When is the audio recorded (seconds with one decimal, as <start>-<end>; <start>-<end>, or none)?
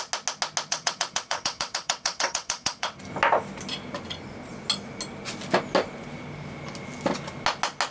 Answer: 0.0-0.7; 3.0-7.9